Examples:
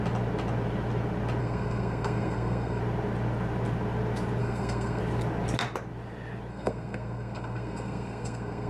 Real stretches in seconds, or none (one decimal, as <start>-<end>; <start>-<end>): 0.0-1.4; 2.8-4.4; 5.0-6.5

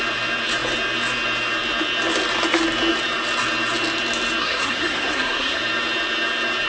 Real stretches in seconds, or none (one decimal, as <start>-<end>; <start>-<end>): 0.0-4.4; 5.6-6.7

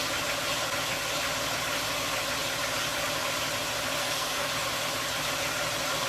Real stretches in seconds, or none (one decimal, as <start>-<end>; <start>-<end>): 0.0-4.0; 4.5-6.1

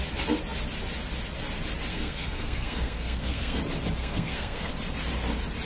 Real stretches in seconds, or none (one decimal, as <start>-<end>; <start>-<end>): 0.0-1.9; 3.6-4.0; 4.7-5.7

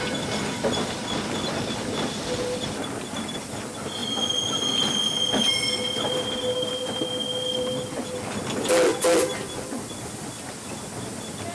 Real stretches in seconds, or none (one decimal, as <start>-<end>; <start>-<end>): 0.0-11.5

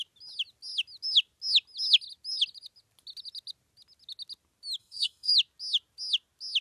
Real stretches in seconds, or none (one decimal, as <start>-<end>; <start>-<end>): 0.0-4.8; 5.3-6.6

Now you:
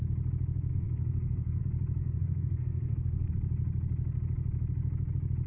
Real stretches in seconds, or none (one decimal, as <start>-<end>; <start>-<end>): 0.0-0.7; 1.6-2.0; 3.3-5.5

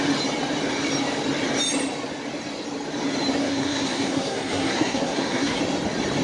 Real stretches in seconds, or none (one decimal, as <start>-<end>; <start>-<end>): 0.0-3.4; 5.6-6.2